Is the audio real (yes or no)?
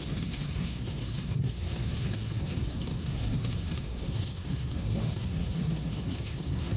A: no